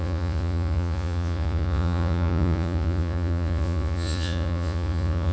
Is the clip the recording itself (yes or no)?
no